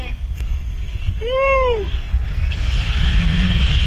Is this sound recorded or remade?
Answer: remade